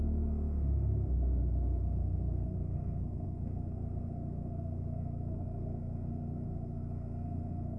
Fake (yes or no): yes